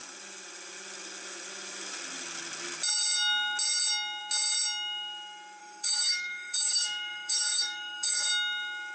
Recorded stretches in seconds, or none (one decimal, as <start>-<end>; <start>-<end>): 0.0-5.6; 8.3-8.9